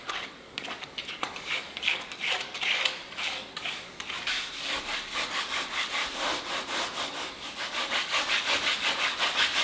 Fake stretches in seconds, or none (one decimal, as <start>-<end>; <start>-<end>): 0.0-6.0; 7.0-9.6

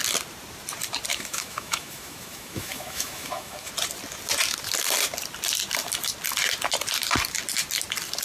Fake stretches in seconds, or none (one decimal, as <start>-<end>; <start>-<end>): 1.1-3.7

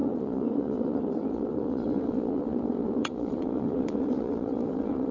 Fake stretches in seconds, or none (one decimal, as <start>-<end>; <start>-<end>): 0.0-5.1

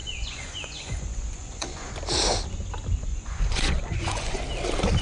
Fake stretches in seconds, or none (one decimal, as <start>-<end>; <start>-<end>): 0.0-1.9; 3.1-4.4

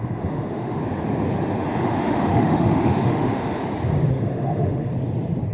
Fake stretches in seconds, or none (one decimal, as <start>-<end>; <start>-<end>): 0.0-0.8; 1.8-3.6; 4.1-4.9